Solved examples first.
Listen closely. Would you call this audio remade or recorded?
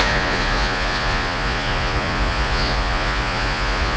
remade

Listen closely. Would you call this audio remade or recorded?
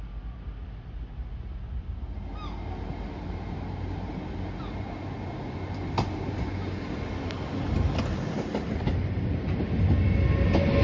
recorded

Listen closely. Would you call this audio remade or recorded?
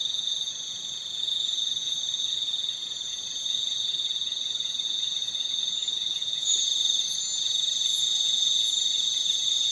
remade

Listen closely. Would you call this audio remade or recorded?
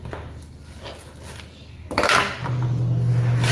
recorded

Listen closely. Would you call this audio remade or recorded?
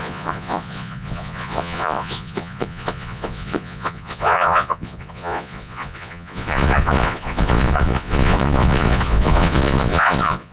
remade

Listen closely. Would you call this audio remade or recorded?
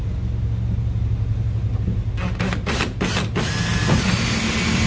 recorded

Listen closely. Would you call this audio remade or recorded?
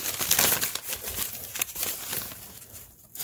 recorded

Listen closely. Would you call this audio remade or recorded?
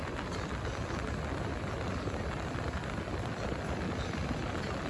recorded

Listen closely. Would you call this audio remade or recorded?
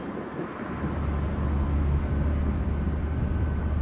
recorded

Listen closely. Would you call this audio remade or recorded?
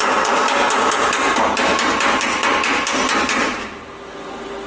recorded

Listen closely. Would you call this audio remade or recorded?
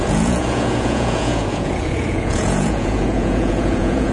remade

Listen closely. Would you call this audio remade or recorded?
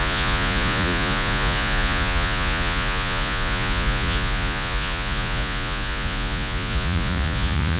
remade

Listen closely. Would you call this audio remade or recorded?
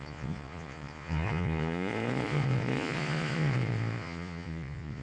remade